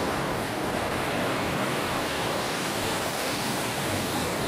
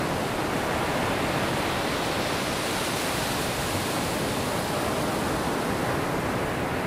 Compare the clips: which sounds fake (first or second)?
first